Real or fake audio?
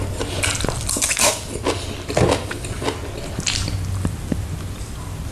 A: real